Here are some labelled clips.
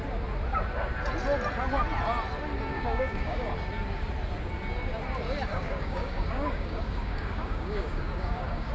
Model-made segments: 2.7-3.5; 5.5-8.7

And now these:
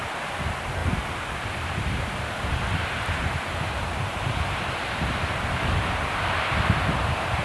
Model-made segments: 0.0-7.4

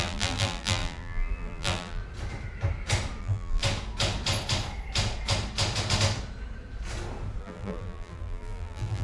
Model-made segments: 0.0-2.0; 3.2-3.6; 7.4-9.0

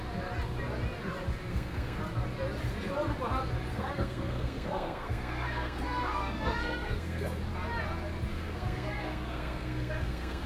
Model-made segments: 1.5-2.0; 3.7-7.4; 8.3-10.5